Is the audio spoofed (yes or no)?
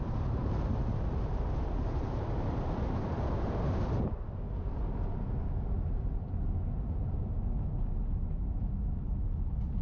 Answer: no